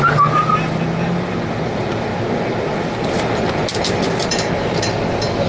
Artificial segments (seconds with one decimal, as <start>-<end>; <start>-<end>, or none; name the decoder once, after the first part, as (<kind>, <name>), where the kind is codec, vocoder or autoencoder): none